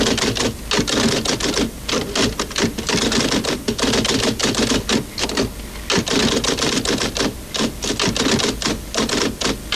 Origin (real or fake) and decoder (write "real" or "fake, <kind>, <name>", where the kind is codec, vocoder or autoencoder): real